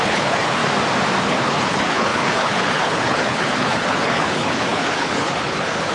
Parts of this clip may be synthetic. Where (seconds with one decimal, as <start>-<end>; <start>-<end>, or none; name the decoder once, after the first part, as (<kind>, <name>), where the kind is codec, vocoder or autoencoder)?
0.0-0.6 (codec, HILCodec); 1.2-5.9